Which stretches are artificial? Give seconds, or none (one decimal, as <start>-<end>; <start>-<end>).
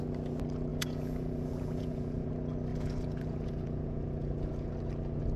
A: 0.7-2.3; 2.7-4.7